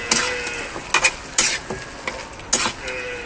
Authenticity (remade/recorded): recorded